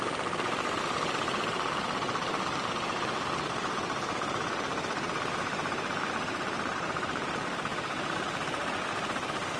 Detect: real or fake fake